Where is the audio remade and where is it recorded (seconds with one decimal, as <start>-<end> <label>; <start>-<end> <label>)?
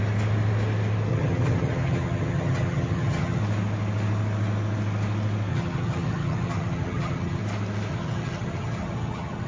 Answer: 0.0-1.1 recorded; 1.1-3.4 remade; 3.4-5.5 recorded; 5.5-7.4 remade; 7.4-7.9 recorded; 7.9-9.5 remade